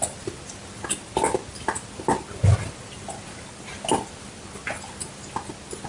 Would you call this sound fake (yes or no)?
no